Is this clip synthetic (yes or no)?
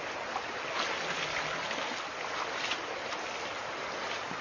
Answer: no